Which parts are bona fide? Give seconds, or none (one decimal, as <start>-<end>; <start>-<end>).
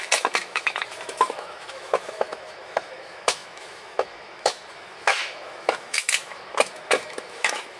none